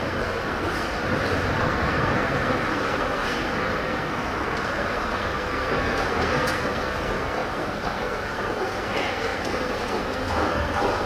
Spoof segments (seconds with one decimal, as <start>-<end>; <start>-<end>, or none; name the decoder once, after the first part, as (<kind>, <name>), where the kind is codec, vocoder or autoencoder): 0.0-1.0 (codec, SNAC); 1.6-11.1